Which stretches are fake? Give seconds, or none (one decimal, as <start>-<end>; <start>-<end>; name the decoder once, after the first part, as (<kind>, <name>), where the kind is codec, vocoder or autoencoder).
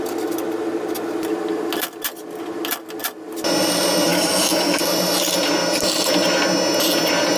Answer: 4.1-4.8 (autoencoder, DAC-VAE)